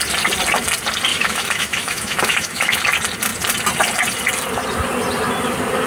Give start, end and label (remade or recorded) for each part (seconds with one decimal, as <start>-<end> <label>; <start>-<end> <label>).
0.0-1.1 recorded; 1.1-2.8 remade; 2.8-5.9 recorded